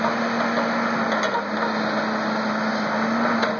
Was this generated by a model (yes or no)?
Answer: no